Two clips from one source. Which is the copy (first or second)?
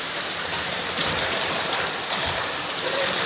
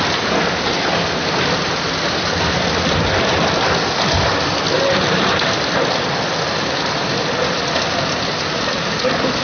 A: first